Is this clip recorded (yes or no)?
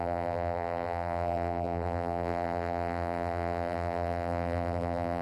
no